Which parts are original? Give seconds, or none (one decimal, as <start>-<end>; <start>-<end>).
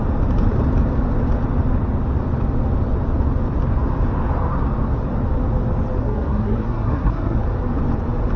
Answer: 0.0-6.0; 7.4-8.4